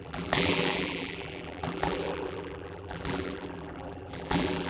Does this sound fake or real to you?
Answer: fake